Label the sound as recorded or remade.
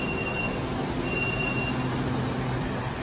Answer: recorded